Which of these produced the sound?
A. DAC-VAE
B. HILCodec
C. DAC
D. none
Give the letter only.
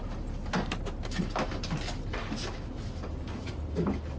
D